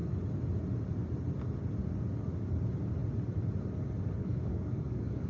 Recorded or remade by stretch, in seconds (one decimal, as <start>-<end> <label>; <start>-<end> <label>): 0.0-4.2 recorded; 4.2-5.3 remade